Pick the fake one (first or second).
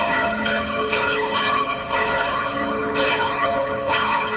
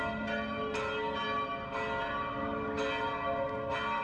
first